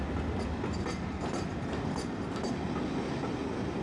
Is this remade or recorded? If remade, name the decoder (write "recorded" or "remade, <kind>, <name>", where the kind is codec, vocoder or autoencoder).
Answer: recorded